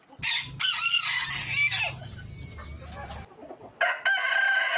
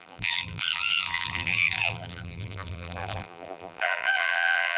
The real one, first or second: first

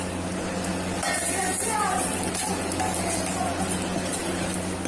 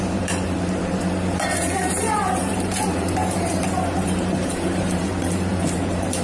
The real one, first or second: first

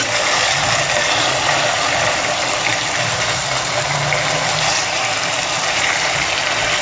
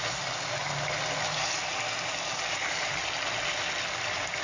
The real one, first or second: second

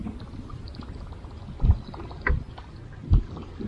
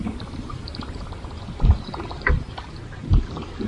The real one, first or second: first